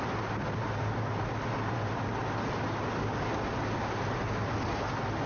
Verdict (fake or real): real